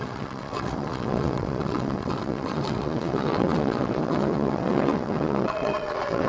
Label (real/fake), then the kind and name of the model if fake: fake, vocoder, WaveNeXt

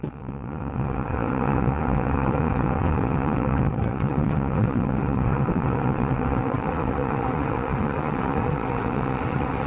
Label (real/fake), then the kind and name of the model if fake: fake, vocoder, WaveNeXt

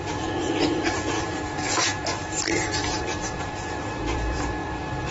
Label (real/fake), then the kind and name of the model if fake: fake, vocoder, BigVGAN v2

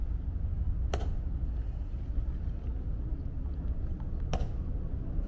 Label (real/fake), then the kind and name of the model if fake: real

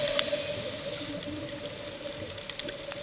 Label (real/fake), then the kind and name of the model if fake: real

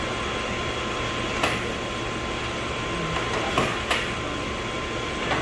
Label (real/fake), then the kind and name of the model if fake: real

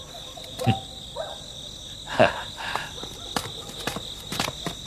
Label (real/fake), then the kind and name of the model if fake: real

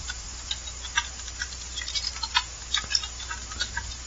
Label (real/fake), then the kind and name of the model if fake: fake, vocoder, BigVGAN v2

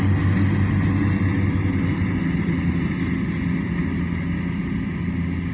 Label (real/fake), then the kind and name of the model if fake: real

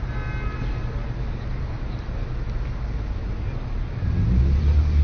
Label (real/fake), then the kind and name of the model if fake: real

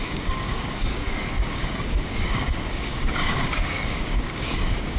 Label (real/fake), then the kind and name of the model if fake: fake, codec, DAC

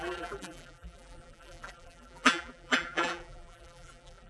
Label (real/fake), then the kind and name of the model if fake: fake, vocoder, BigVGAN v2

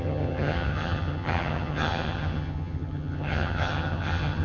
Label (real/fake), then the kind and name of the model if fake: fake, vocoder, HiFi-GAN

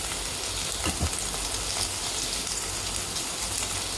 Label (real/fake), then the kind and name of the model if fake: real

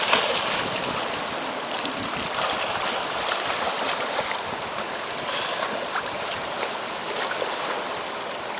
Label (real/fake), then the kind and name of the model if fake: real